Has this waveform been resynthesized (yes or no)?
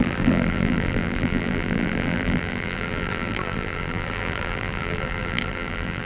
yes